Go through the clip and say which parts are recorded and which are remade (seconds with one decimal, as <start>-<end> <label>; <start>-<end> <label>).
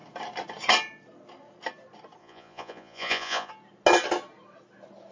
0.0-2.2 recorded; 2.2-3.5 remade; 3.5-5.1 recorded